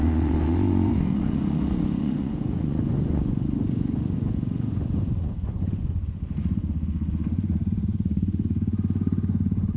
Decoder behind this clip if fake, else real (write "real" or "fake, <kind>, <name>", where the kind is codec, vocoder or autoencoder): fake, vocoder, Vocos